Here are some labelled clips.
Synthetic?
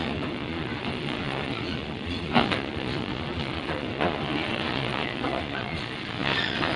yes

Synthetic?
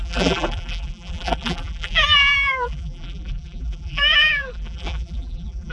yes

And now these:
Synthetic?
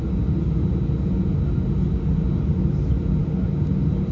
no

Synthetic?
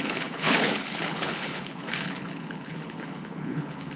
yes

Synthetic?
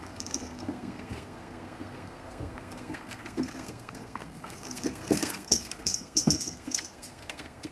yes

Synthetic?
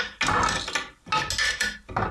no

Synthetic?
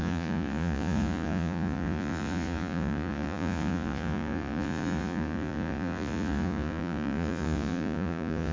yes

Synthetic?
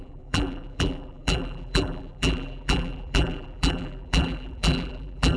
yes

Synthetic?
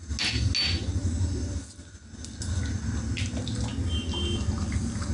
no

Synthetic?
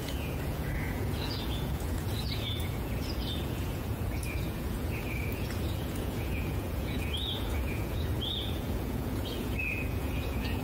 yes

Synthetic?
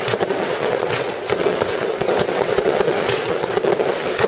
yes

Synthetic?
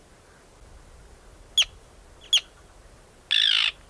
no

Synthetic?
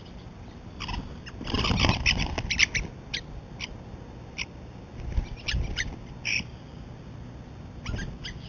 no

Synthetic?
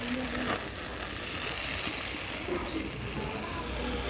no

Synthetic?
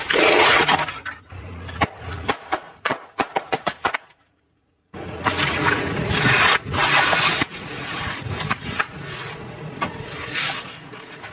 yes